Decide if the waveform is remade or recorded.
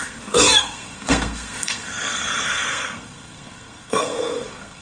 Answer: remade